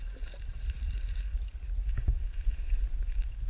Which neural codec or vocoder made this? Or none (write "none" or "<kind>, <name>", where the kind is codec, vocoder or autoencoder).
none